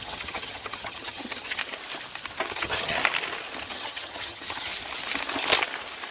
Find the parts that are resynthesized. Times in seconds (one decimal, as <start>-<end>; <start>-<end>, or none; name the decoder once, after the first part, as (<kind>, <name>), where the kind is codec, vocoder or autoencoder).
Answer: 0.0-1.6 (vocoder, HiFi-GAN); 2.5-3.0; 3.6-4.7